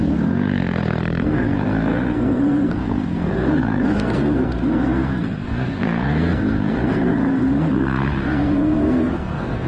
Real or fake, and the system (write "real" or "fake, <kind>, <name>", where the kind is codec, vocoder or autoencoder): fake, codec, SNAC